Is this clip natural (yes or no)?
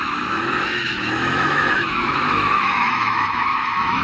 no